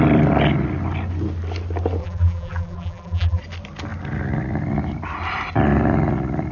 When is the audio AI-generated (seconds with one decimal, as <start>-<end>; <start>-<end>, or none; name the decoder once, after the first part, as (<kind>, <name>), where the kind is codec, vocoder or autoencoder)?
2.0-3.4 (vocoder, BigVGAN v2)